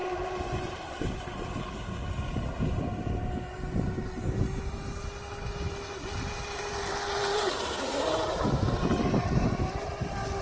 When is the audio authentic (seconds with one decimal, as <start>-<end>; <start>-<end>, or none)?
1.0-7.3; 9.9-10.4